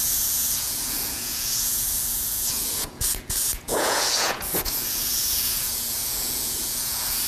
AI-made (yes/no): yes